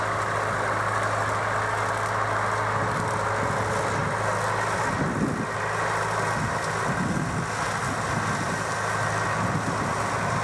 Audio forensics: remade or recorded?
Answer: recorded